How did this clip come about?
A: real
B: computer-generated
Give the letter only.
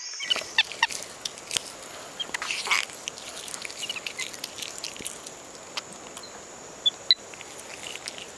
A